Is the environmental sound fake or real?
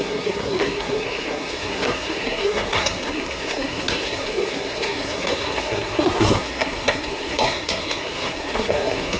fake